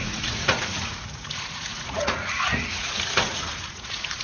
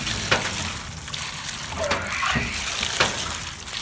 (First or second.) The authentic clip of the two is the second